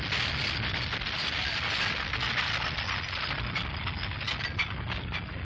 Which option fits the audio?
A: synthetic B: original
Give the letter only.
B